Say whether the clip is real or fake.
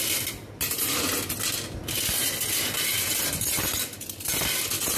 real